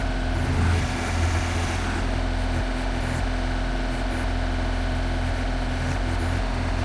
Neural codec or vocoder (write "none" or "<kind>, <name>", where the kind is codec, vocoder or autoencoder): none